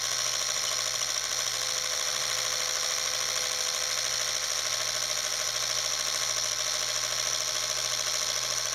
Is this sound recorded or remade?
recorded